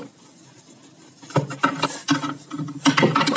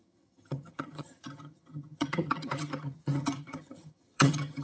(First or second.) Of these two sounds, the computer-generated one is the second